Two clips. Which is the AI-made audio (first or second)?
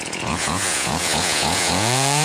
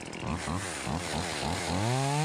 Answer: first